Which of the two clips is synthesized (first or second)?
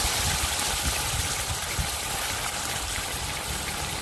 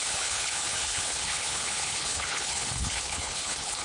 second